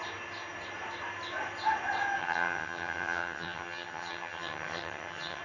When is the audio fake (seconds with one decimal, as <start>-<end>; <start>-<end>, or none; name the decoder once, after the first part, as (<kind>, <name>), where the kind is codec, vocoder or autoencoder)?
2.2-5.4 (vocoder, HiFi-GAN)